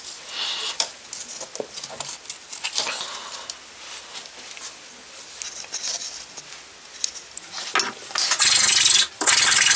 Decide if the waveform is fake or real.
real